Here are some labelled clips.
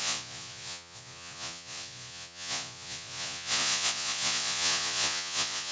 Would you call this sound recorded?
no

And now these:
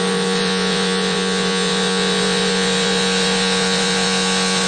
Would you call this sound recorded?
no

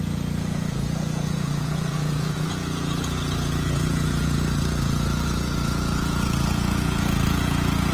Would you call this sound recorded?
no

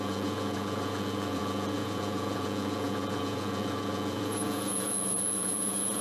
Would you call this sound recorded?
no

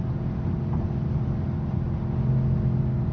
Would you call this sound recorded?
yes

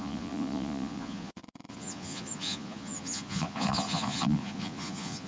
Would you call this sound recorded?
no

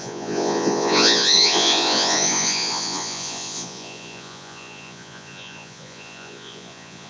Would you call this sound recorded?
no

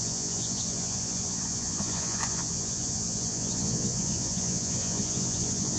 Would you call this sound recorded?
no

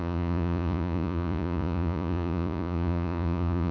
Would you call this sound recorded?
no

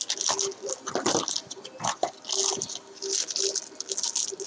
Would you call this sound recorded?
yes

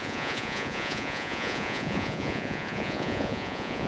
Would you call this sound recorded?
no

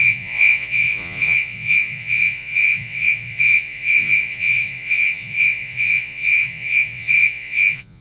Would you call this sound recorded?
no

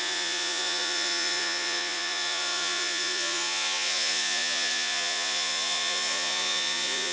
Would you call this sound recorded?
no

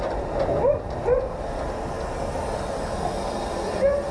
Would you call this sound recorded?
yes